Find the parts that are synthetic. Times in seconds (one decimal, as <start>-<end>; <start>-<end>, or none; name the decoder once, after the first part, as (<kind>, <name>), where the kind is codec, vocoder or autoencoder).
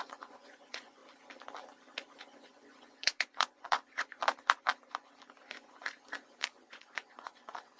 0.0-1.0 (vocoder, Vocos); 2.2-4.2; 5.4-7.8